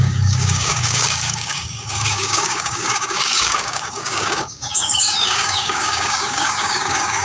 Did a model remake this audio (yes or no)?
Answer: yes